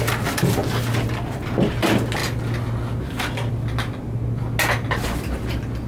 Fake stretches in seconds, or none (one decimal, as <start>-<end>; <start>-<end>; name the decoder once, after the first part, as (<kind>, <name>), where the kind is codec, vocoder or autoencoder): none